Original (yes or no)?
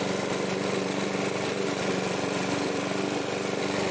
no